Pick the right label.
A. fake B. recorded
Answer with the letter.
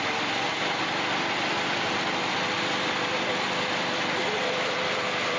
B